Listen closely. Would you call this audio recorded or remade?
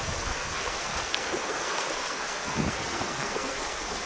remade